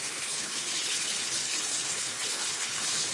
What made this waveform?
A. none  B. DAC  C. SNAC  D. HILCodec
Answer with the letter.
D